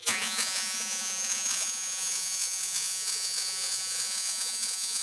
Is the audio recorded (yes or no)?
no